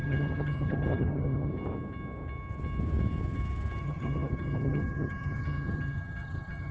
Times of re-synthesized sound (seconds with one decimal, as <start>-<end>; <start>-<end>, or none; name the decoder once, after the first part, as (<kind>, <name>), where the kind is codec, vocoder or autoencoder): 0.0-1.5 (vocoder, HiFi-GAN); 3.8-6.7